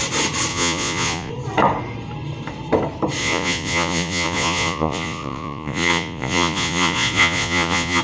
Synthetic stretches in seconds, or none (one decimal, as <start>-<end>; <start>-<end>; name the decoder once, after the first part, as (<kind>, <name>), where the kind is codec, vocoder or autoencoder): 0.5-1.3 (vocoder, Vocos); 3.2-8.0